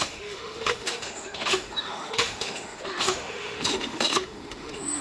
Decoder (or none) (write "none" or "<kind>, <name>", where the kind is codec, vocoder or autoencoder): autoencoder, DAC-VAE